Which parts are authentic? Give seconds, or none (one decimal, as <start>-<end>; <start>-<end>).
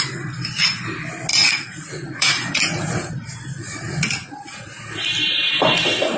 0.0-1.3; 3.1-3.6; 4.7-6.2